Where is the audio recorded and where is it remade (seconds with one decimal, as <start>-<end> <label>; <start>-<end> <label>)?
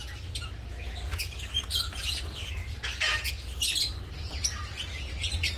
0.0-0.7 recorded; 0.7-1.2 remade; 1.2-5.6 recorded